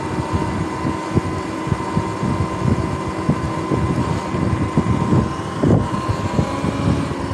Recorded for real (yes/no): yes